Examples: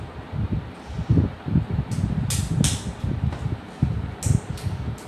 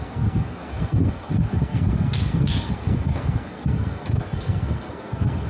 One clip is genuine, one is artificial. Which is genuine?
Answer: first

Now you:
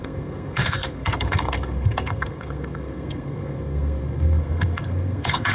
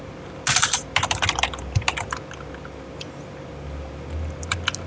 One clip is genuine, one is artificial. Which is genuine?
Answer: second